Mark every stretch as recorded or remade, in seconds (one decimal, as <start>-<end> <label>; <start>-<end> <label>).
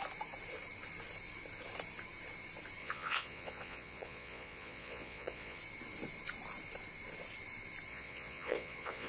0.0-2.8 recorded; 2.8-5.6 remade; 5.6-7.9 recorded; 7.9-9.1 remade